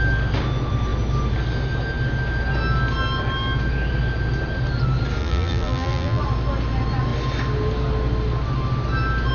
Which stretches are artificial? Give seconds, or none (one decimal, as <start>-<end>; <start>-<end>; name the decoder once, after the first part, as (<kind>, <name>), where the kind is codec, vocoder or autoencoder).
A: 5.2-6.2 (vocoder, BigVGAN v2)